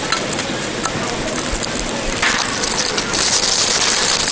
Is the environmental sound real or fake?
real